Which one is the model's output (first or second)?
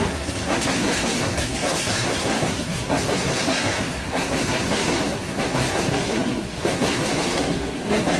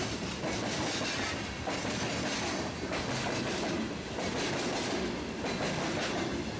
first